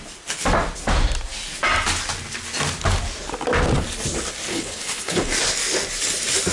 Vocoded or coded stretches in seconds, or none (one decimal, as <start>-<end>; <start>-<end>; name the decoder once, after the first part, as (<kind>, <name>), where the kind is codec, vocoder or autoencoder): 4.5-5.3 (codec, HILCodec)